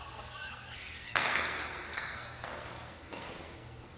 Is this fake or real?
fake